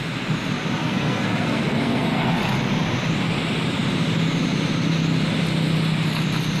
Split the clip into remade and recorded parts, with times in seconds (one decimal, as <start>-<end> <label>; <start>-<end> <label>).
0.0-0.8 recorded; 0.8-2.4 remade; 2.4-6.6 recorded